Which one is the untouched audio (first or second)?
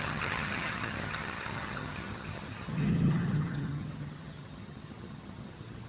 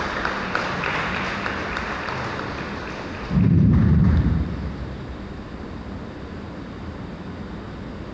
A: second